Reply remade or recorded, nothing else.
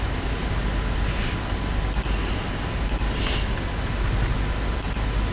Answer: recorded